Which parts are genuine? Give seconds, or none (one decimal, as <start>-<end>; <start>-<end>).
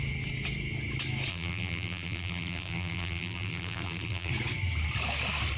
0.0-1.3; 4.3-5.6